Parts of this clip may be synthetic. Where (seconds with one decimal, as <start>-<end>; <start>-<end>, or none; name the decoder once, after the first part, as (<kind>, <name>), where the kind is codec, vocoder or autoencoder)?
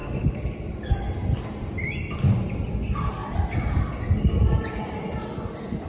none